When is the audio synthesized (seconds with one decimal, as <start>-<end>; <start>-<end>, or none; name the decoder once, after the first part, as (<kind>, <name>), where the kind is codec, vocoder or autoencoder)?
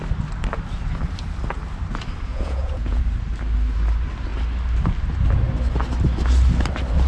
2.3-3.0 (vocoder, Vocos)